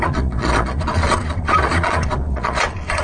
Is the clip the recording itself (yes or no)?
no